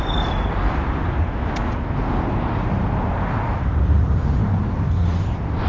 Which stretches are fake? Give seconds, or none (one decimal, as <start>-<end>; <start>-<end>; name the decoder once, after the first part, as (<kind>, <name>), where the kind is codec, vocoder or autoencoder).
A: 0.0-1.6 (vocoder, BigVGAN v2); 3.6-5.7